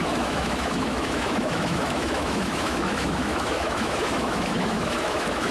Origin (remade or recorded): remade